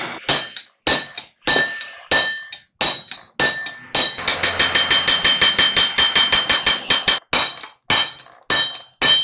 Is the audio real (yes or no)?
yes